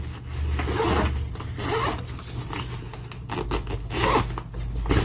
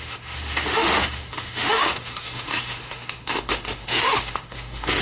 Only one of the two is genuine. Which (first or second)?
first